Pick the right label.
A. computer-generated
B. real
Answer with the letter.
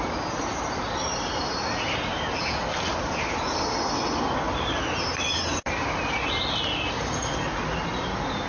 B